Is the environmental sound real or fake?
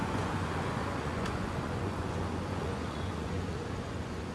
fake